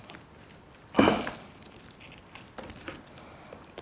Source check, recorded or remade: recorded